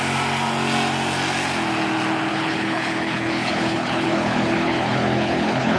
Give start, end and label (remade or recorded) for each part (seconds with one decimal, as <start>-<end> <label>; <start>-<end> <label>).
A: 0.0-2.3 recorded; 2.3-5.8 remade